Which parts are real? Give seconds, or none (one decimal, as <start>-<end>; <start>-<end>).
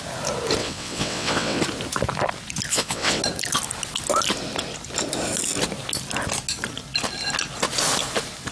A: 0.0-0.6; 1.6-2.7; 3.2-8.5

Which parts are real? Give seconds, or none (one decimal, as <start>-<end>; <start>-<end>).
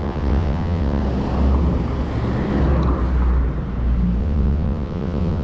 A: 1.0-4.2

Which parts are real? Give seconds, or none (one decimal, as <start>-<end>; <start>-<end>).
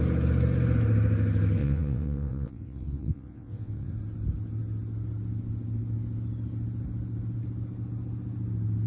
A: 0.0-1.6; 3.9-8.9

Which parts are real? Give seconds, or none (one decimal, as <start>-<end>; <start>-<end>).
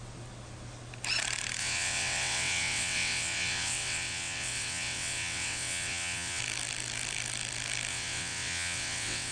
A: 0.0-1.6; 6.4-7.9